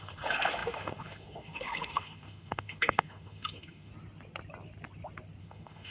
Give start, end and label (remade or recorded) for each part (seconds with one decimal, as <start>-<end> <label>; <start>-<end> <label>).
0.0-3.9 remade; 3.9-5.4 recorded; 5.4-5.9 remade

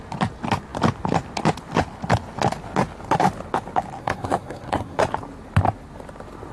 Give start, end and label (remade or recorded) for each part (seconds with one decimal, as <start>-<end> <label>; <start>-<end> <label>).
0.0-4.0 recorded; 4.0-5.0 remade; 5.0-6.5 recorded

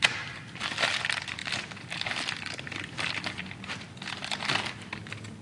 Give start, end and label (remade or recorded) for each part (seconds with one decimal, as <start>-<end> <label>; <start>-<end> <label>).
0.0-5.4 recorded

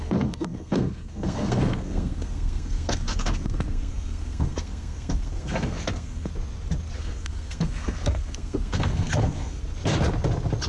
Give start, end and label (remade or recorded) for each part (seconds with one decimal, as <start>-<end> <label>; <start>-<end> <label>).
0.0-6.3 remade; 6.3-7.0 recorded; 7.0-9.6 remade; 9.6-10.7 recorded

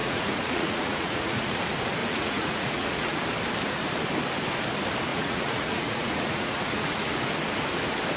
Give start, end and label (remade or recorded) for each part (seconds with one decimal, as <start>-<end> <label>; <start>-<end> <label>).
0.0-1.6 remade; 1.6-2.0 recorded; 2.0-3.2 remade; 3.2-5.1 recorded; 5.1-7.1 remade; 7.1-8.2 recorded

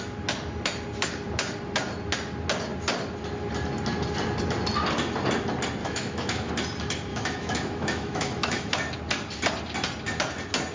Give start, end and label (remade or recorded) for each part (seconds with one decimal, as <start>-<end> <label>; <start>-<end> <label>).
0.0-5.8 recorded; 5.8-6.5 remade; 6.5-7.1 recorded; 7.1-8.7 remade; 8.7-10.7 recorded

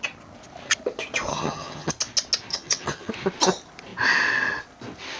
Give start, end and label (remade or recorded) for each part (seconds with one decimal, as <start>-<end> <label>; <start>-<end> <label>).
0.0-1.3 recorded; 1.3-1.9 remade; 1.9-2.5 recorded; 2.5-3.1 remade; 3.1-5.2 recorded